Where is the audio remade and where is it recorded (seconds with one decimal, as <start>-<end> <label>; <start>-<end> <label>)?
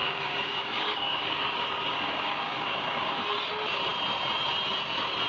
0.0-3.2 remade; 3.2-5.3 recorded